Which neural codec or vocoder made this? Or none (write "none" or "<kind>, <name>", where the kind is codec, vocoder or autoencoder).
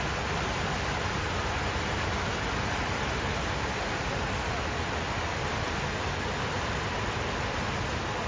none